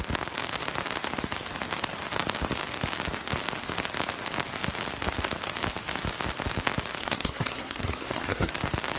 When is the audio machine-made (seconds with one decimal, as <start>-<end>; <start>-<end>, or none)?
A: 7.0-8.5